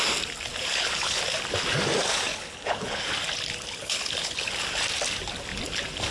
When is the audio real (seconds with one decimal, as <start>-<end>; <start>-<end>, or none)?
0.0-0.7; 1.2-2.3; 3.1-3.8; 4.3-6.1